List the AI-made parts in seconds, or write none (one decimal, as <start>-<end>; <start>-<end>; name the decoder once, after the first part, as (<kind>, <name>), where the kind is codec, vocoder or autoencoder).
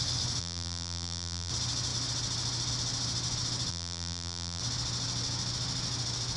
0.4-1.5 (vocoder, BigVGAN v2); 3.7-4.6